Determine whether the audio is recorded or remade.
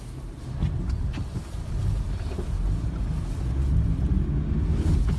recorded